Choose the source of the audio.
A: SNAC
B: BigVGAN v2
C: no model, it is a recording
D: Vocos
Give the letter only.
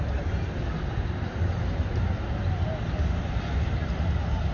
C